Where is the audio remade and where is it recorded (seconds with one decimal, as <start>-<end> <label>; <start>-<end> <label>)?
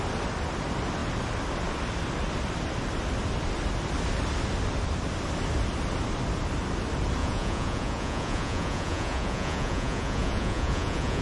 0.0-7.2 recorded; 7.2-11.2 remade